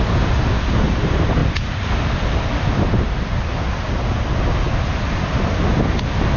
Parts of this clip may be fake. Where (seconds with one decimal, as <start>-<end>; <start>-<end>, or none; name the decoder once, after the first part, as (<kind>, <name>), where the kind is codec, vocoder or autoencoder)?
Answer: none